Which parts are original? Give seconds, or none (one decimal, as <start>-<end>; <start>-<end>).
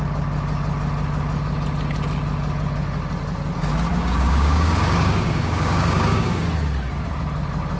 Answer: 0.0-3.9; 6.4-7.8